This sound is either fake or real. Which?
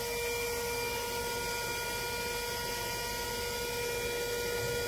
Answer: real